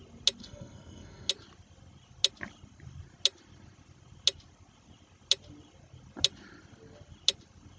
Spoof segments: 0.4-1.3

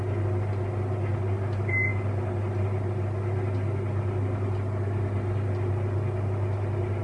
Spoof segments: none

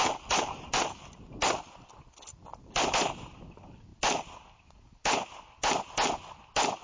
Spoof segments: none

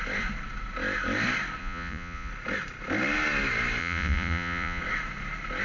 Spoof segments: 1.6-2.3; 3.8-4.8

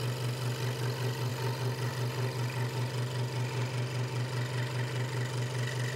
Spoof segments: none

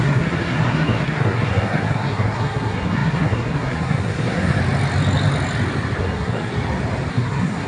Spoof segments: 0.0-4.6; 6.0-6.5; 7.1-7.7

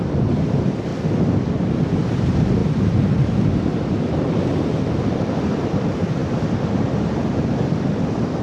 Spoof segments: 0.0-0.9; 1.7-6.2; 8.0-8.4